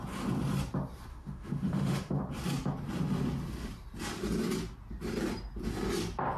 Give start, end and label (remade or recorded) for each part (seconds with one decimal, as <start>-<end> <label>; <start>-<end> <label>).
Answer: 0.0-1.1 recorded; 1.1-2.2 remade; 2.2-6.4 recorded